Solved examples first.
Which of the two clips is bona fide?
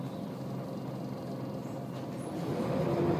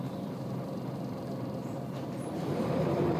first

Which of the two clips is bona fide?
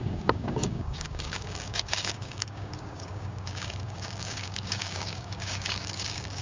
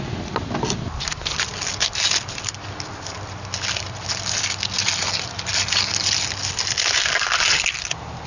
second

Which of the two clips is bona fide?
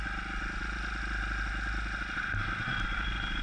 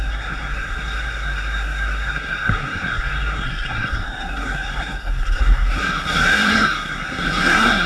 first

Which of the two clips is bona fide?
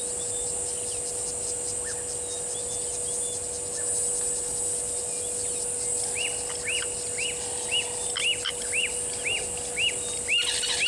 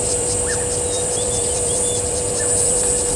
first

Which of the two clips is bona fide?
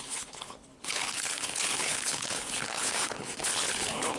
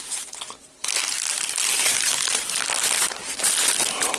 second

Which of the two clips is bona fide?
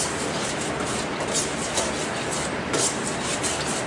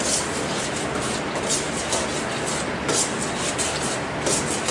second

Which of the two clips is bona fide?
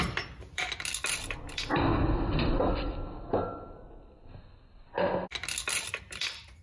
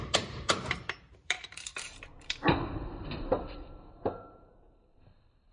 first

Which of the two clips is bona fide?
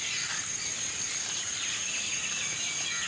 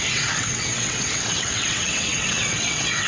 first